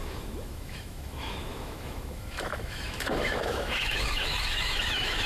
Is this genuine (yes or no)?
no